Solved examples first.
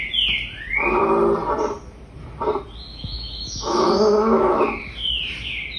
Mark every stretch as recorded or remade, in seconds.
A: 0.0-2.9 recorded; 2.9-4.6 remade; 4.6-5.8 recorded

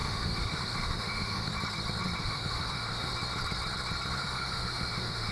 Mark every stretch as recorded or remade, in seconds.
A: 0.0-1.5 remade; 1.5-2.2 recorded; 2.2-3.1 remade; 3.1-4.2 recorded; 4.2-5.3 remade

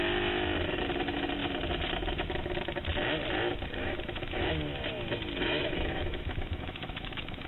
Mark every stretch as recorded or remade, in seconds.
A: 0.0-3.8 recorded; 3.8-4.5 remade; 4.5-5.6 recorded; 5.6-7.5 remade

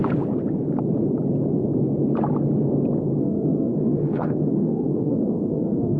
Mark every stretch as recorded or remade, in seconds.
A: 0.0-3.2 recorded; 3.2-6.0 remade

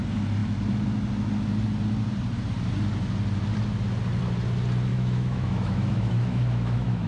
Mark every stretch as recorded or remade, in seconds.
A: 0.0-4.9 recorded; 4.9-7.1 remade

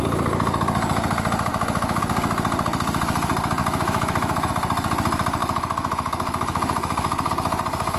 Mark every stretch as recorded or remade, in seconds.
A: 0.0-1.5 recorded; 1.5-2.0 remade; 2.0-3.6 recorded; 3.6-4.5 remade; 4.5-5.4 recorded; 5.4-7.3 remade; 7.3-8.0 recorded